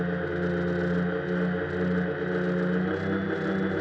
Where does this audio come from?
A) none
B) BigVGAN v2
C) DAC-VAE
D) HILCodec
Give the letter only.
A